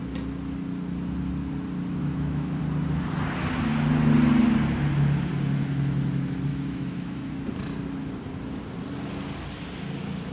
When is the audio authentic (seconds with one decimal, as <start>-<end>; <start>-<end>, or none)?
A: 0.0-2.0; 2.6-6.5; 7.3-10.3